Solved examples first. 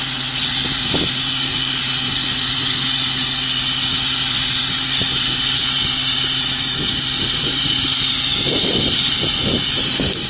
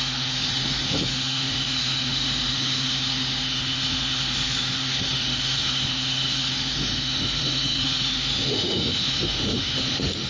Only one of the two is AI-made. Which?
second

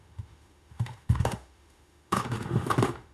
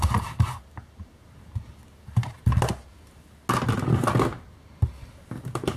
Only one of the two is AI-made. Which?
first